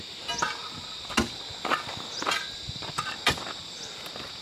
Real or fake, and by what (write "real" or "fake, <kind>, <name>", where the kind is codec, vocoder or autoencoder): real